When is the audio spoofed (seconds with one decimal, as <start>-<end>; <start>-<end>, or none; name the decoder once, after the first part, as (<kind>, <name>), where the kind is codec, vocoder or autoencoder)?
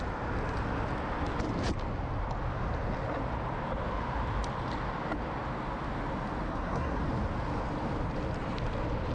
6.5-7.0 (codec, SNAC)